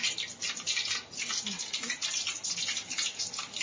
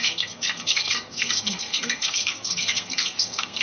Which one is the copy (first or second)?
second